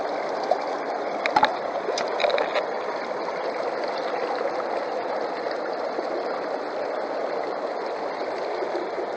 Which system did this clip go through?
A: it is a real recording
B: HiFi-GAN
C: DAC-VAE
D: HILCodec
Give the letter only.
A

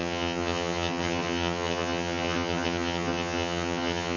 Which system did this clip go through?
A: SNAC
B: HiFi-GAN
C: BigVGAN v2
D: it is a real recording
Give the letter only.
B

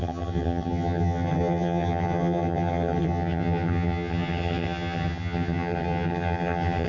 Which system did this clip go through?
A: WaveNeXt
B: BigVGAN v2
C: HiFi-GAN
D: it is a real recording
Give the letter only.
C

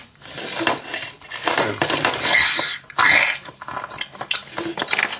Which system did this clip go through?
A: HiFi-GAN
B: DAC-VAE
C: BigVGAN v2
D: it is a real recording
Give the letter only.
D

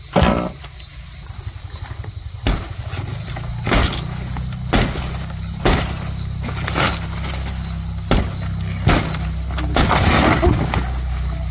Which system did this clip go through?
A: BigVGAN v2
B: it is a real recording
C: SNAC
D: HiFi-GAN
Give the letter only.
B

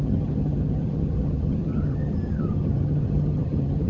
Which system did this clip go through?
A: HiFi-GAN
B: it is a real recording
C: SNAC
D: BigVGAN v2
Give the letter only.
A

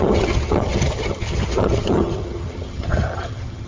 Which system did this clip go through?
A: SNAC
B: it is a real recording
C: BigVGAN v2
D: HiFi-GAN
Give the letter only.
D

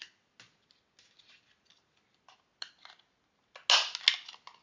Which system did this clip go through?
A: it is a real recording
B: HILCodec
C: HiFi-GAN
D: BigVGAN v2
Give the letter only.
A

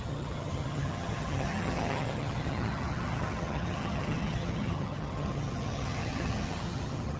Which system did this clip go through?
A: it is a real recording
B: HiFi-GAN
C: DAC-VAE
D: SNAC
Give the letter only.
B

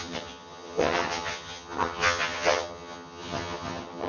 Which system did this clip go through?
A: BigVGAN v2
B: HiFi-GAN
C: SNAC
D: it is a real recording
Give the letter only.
B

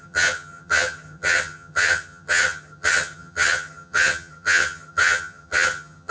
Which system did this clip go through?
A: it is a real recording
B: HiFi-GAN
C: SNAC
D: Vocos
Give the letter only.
B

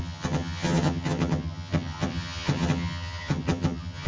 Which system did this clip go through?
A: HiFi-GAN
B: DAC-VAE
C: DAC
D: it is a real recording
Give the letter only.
A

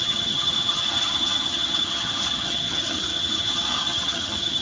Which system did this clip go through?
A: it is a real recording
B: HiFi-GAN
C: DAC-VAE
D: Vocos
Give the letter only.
B